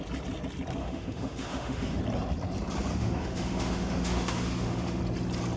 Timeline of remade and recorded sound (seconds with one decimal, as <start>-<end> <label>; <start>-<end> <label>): 0.0-0.8 recorded; 0.8-2.0 remade; 2.0-2.9 recorded; 2.9-5.0 remade; 5.0-5.6 recorded